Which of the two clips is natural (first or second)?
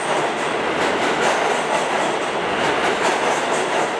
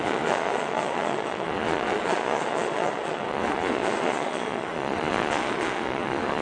first